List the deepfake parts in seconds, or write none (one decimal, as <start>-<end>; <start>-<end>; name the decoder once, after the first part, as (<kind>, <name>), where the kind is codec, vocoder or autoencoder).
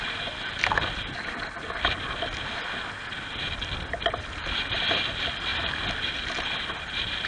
none